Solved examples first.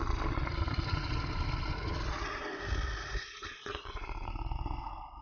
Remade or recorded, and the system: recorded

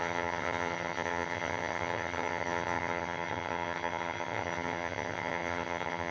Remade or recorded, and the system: remade, vocoder, HiFi-GAN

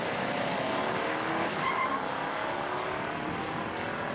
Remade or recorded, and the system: recorded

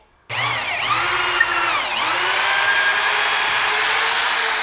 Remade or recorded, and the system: recorded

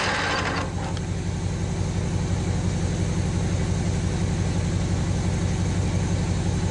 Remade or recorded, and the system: recorded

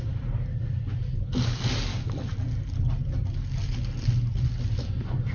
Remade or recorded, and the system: recorded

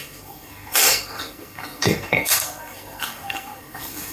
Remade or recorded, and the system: remade, codec, SNAC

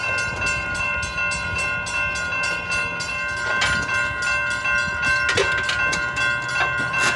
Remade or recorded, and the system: recorded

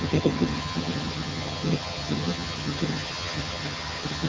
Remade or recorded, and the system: remade, vocoder, HiFi-GAN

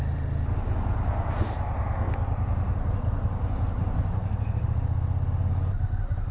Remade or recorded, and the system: recorded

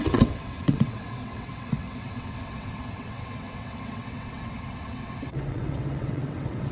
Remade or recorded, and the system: remade, vocoder, WaveNeXt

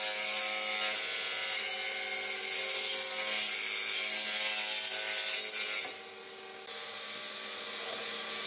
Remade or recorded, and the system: recorded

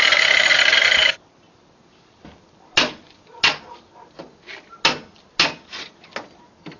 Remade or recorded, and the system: recorded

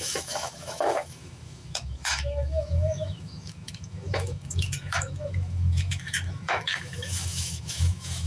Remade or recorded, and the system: remade, autoencoder, DAC-VAE